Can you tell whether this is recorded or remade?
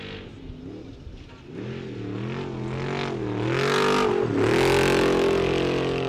recorded